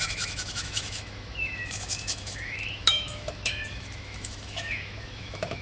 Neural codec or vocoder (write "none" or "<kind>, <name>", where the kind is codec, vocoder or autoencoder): autoencoder, DAC-VAE